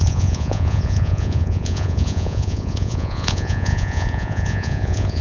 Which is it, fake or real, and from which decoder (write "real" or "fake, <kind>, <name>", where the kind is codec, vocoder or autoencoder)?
fake, vocoder, Vocos